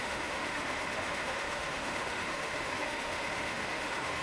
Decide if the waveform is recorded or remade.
remade